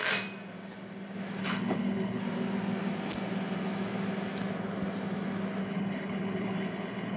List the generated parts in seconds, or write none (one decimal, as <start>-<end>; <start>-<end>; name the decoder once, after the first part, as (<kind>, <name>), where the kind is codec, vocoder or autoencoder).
1.4-2.2 (codec, HILCodec); 5.6-7.2